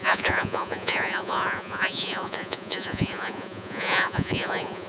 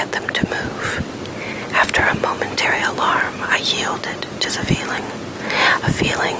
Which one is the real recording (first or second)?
second